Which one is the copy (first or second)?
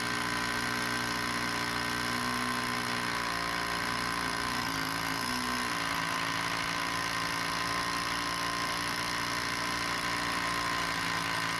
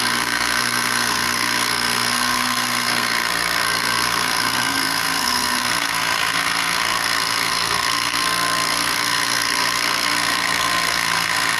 second